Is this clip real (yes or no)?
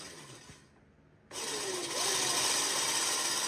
yes